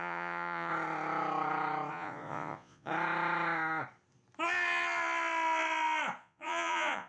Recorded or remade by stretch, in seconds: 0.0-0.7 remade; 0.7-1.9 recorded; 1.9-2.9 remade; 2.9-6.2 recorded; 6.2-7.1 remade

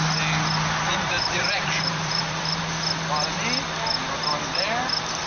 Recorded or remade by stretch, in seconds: 0.0-0.9 recorded; 0.9-2.6 remade; 2.6-5.3 recorded